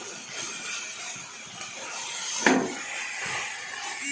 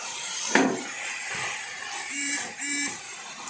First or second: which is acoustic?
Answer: first